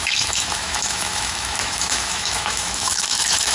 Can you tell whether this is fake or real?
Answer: fake